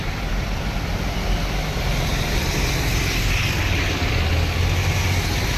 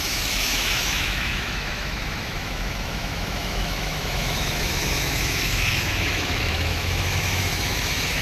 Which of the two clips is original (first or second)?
first